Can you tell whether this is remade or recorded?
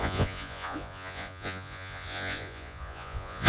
remade